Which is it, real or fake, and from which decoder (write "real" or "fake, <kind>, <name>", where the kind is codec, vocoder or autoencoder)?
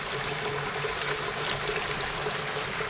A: real